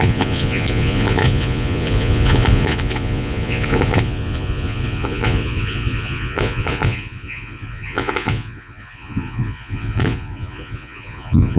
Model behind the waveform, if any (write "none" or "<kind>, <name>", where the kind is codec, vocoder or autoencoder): vocoder, Vocos